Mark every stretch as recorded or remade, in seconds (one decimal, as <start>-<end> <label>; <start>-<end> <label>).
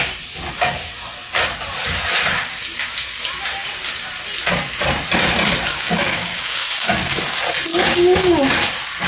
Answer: 0.0-5.7 recorded; 5.7-7.0 remade; 7.0-7.7 recorded; 7.7-8.4 remade; 8.4-9.1 recorded